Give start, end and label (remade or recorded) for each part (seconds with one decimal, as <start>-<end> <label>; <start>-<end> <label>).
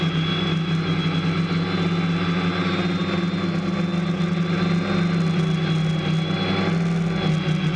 0.0-7.8 recorded